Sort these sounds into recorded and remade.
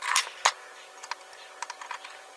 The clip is recorded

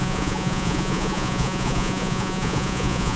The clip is remade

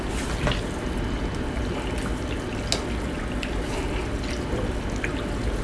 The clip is recorded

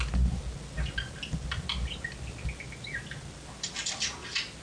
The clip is recorded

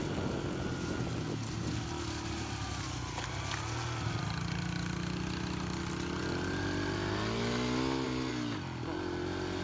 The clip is recorded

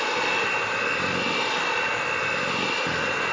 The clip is recorded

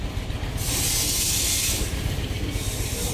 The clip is recorded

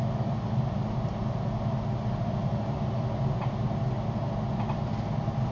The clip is recorded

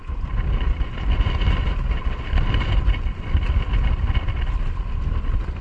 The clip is recorded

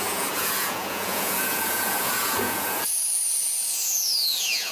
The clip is remade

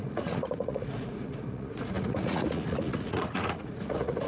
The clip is remade